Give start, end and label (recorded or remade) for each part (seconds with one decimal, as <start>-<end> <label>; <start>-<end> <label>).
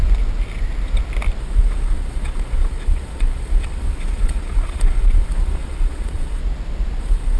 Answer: 0.0-1.4 recorded; 1.4-6.4 remade; 6.4-7.0 recorded; 7.0-7.4 remade